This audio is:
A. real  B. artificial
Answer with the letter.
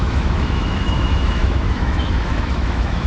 B